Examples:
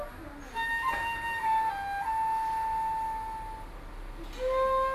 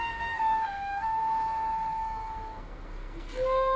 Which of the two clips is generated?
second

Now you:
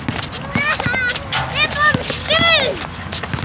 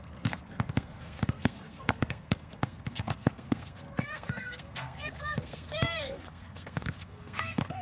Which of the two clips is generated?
second